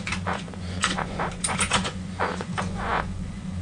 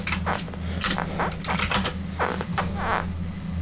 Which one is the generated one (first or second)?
first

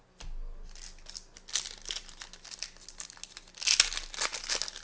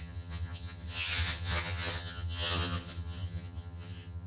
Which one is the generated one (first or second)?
second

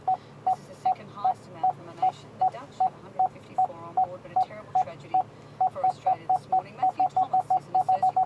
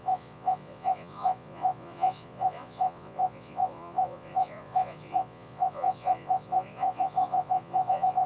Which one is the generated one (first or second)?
second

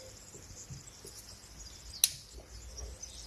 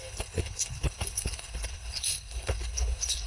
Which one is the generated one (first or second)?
second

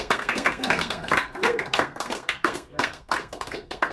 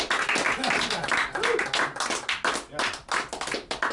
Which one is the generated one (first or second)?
first